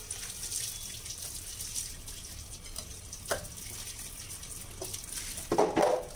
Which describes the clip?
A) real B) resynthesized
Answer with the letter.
A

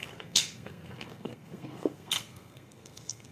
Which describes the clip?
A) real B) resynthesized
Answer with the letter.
B